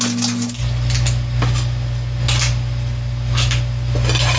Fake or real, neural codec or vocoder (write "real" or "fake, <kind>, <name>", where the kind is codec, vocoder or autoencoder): real